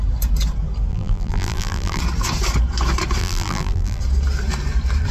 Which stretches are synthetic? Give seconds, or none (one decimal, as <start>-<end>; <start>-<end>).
0.9-2.0; 3.2-4.0